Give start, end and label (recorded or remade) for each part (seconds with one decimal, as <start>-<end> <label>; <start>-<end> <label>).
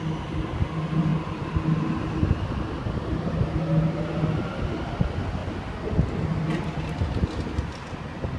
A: 0.0-8.4 recorded